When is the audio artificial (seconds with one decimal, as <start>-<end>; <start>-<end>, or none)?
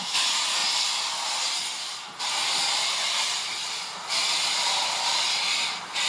0.0-0.6; 2.2-6.1